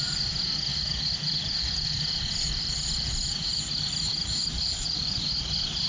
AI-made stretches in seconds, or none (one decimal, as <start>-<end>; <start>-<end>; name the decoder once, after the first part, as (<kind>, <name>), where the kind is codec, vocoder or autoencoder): 4.4-5.1 (vocoder, BigVGAN v2)